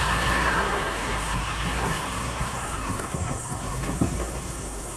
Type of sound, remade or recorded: remade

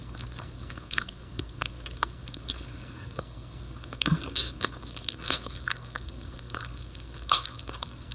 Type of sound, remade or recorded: remade